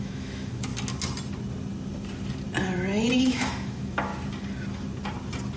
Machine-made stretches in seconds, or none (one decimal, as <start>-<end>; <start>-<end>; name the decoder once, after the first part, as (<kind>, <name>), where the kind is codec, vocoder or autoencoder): 0.0-0.7 (autoencoder, DAC-VAE); 3.2-4.1

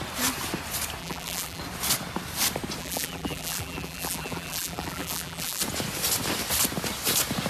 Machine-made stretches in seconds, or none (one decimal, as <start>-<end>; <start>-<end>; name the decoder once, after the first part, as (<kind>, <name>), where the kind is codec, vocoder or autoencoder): 1.0-1.6 (vocoder, BigVGAN v2); 2.8-5.6

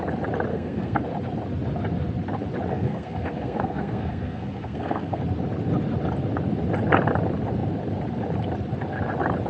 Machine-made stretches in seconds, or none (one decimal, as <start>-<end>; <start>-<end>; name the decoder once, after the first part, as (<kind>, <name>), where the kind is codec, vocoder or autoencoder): 0.5-1.0 (codec, SNAC); 2.7-5.2

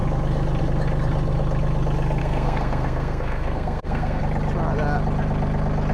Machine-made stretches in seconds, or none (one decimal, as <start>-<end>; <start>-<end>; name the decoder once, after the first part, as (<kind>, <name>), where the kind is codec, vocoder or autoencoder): 2.2-4.2 (codec, SNAC)

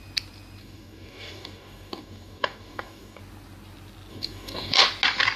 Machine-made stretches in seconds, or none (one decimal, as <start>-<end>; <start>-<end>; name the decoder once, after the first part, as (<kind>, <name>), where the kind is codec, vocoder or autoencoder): 0.6-3.2 (codec, DAC); 4.1-4.8